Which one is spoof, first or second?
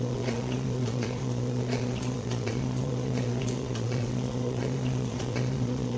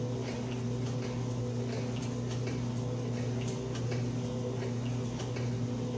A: first